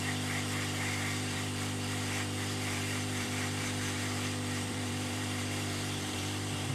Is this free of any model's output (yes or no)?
no